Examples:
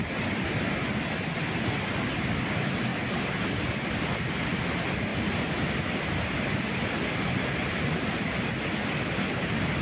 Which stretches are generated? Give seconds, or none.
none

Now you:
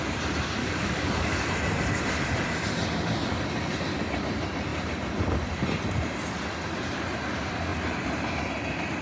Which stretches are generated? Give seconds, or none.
0.6-1.5 (codec, DAC)

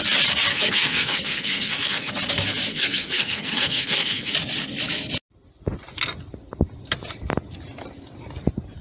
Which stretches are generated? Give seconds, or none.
0.5-2.1 (codec, SNAC); 2.7-4.3

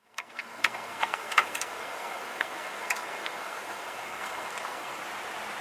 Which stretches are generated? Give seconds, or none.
0.0-5.0 (codec, SNAC)

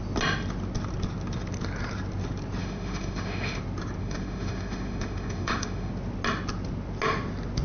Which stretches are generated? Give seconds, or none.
2.6-3.6 (autoencoder, DAC-VAE); 4.0-5.9

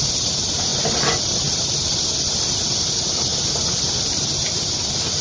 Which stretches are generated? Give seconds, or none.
0.7-2.8 (vocoder, BigVGAN v2)